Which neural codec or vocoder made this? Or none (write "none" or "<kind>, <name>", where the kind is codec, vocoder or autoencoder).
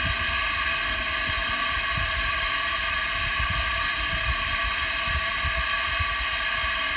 none